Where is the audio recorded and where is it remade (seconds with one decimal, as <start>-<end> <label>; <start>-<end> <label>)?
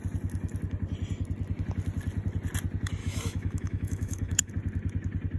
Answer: 0.0-3.0 recorded; 3.0-4.5 remade; 4.5-5.4 recorded